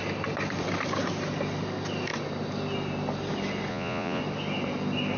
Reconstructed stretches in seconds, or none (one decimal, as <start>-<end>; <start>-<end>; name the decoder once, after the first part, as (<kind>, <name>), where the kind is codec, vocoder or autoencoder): 3.7-4.2 (vocoder, Vocos)